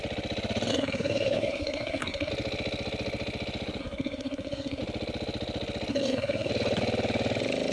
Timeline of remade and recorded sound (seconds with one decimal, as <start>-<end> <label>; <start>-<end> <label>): 0.0-0.7 recorded; 0.7-2.3 remade; 2.3-3.8 recorded; 3.8-4.8 remade; 4.8-5.9 recorded; 5.9-6.5 remade; 6.5-7.7 recorded

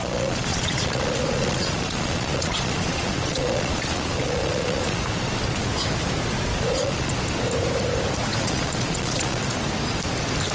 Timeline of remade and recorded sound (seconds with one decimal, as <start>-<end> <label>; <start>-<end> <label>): 0.0-5.0 remade; 5.0-6.5 recorded; 6.5-7.1 remade; 7.1-8.3 recorded; 8.3-9.4 remade; 9.4-10.5 recorded

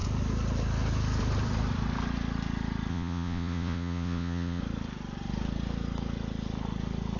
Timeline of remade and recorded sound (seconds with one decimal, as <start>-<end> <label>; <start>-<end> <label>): 0.0-2.9 recorded; 2.9-4.6 remade; 4.6-7.2 recorded

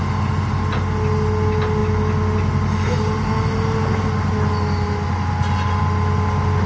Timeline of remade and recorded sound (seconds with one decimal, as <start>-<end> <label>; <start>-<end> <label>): 0.0-6.7 recorded

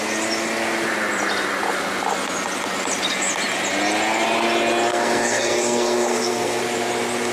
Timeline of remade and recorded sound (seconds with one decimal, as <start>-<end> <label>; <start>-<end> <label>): 0.0-4.9 recorded; 4.9-6.6 remade; 6.6-7.3 recorded

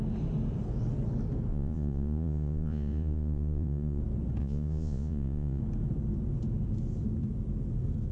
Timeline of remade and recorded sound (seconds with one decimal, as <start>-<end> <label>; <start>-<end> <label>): 0.0-1.5 recorded; 1.5-4.0 remade; 4.0-4.4 recorded; 4.4-5.6 remade; 5.6-8.1 recorded